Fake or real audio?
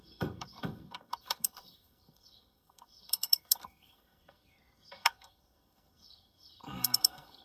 fake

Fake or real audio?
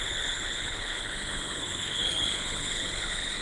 fake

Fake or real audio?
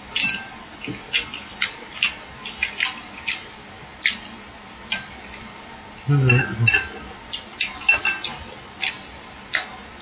real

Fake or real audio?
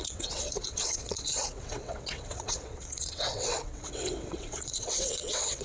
fake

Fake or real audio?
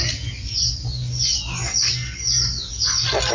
real